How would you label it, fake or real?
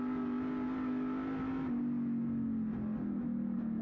real